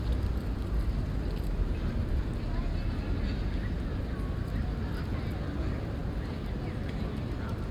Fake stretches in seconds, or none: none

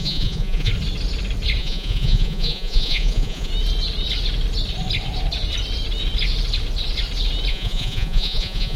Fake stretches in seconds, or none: 0.0-0.7 (vocoder, Vocos); 1.6-3.5; 7.5-8.8

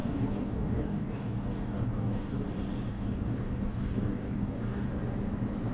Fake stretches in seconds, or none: 0.0-2.4 (codec, DAC); 2.9-4.9

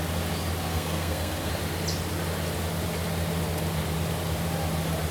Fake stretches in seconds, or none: 0.7-1.5 (codec, SNAC)

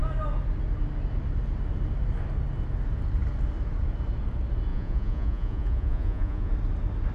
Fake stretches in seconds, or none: 4.7-6.5 (vocoder, Vocos)